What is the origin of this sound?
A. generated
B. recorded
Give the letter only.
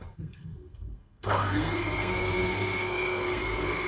A